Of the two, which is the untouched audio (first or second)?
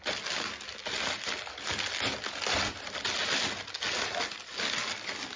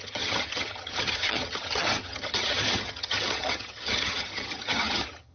first